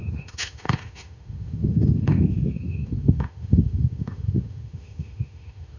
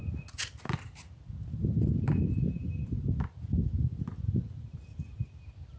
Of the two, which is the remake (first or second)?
first